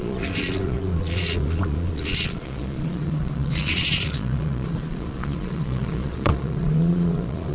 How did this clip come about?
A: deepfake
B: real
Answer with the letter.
A